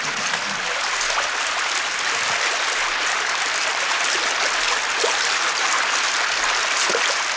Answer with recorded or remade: recorded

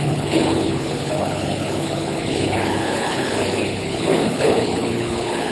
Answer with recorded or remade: remade